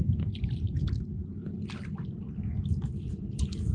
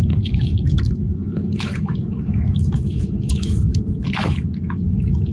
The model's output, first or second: second